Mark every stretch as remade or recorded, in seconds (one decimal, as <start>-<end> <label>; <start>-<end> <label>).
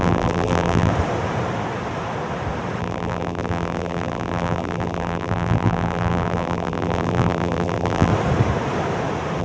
0.0-0.9 remade; 0.9-2.8 recorded; 2.8-8.1 remade; 8.1-9.4 recorded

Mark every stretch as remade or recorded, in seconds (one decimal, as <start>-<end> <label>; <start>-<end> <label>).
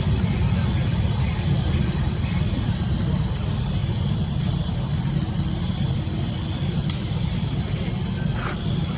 0.0-0.9 recorded; 0.9-1.8 remade; 1.8-3.8 recorded; 3.8-4.4 remade; 4.4-6.6 recorded; 6.6-7.8 remade; 7.8-9.0 recorded